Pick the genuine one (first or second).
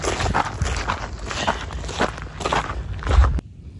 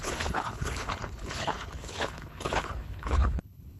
first